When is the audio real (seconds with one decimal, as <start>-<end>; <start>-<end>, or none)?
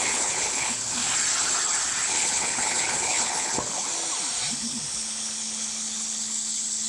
1.0-2.1; 3.9-4.5